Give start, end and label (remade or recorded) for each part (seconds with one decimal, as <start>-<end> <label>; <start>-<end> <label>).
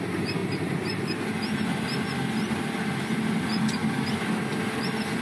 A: 0.0-5.2 recorded